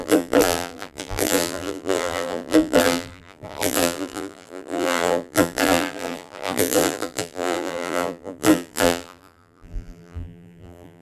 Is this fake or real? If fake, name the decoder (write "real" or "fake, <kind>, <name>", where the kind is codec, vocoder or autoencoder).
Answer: fake, vocoder, BigVGAN v2